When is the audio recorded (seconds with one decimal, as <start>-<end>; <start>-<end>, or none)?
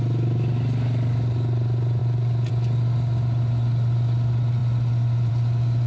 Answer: 0.0-5.9